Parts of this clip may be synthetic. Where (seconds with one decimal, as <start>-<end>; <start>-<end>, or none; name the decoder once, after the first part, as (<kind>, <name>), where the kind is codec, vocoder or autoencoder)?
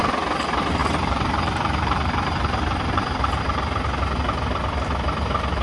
0.8-3.4 (vocoder, BigVGAN v2)